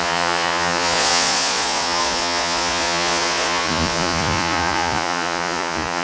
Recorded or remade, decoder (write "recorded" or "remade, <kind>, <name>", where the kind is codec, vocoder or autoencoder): remade, vocoder, Vocos